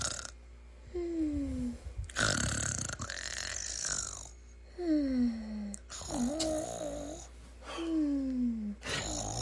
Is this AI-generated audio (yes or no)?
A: no